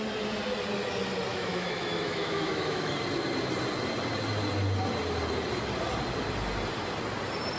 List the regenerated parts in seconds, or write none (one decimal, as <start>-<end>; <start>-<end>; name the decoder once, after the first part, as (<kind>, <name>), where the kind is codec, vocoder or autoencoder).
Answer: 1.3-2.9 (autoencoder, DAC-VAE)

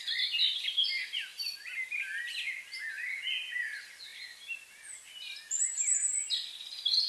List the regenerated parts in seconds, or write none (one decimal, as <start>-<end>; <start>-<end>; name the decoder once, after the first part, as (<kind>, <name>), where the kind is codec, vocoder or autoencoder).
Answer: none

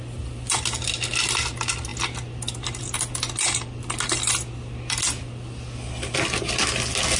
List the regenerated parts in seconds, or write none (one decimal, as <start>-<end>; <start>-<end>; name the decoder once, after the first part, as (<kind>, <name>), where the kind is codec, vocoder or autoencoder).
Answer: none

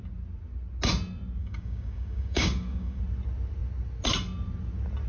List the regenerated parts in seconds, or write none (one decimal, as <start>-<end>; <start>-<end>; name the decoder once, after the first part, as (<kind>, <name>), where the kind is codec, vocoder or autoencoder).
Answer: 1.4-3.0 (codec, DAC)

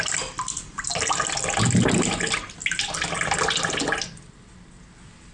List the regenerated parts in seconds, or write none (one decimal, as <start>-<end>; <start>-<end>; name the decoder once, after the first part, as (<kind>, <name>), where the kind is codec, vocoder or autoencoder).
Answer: none

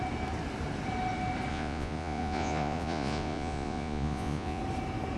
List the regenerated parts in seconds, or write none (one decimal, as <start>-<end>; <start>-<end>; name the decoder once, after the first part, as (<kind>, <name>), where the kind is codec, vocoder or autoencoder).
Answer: 1.5-4.6 (vocoder, Vocos)